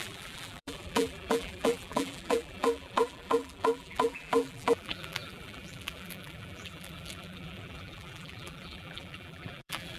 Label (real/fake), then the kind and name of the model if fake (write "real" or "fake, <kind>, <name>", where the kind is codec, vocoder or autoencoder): fake, vocoder, BigVGAN v2